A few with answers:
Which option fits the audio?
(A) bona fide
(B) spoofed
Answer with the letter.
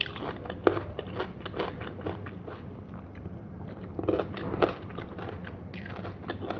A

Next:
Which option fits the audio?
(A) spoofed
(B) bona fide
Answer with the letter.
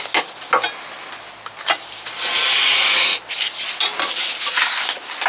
B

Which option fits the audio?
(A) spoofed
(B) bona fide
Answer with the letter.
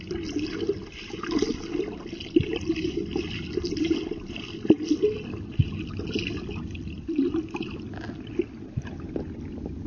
B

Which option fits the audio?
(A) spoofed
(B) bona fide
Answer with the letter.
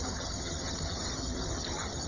A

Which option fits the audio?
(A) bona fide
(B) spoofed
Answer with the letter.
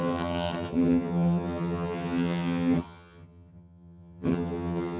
B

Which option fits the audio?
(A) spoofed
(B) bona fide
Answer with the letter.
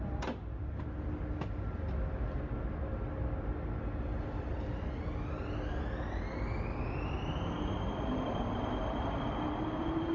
B